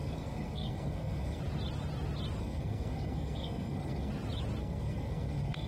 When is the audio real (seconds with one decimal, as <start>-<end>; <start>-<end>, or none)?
1.4-2.4; 4.1-4.6